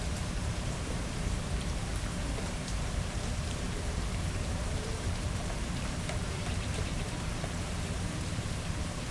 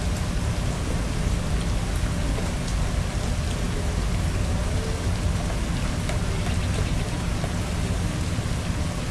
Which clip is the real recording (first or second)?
second